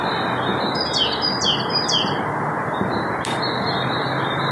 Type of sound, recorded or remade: recorded